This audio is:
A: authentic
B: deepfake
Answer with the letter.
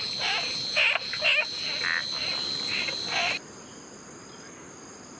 A